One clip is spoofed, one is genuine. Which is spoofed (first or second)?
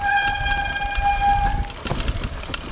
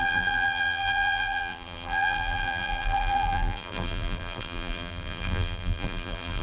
second